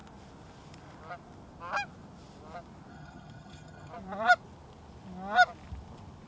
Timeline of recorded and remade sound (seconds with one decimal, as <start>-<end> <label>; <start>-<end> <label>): 0.0-2.9 recorded; 2.9-3.9 remade; 3.9-6.3 recorded